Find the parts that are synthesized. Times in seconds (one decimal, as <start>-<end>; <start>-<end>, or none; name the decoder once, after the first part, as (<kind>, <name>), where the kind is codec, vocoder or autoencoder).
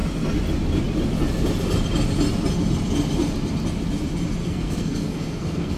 4.4-5.8 (codec, SNAC)